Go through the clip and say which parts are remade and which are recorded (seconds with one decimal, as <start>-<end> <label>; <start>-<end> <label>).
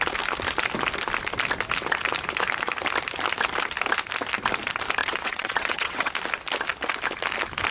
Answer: 0.0-5.0 recorded; 5.0-6.1 remade; 6.1-7.7 recorded